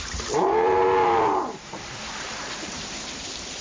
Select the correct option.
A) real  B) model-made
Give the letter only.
B